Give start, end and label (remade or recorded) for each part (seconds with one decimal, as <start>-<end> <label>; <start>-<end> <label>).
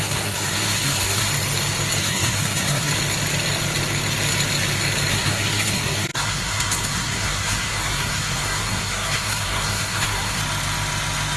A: 0.0-1.3 remade; 1.3-2.0 recorded; 2.0-2.9 remade; 2.9-5.1 recorded; 5.1-10.4 remade; 10.4-11.4 recorded